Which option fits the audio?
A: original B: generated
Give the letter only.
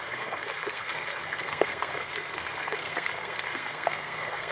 B